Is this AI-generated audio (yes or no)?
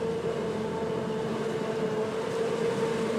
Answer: no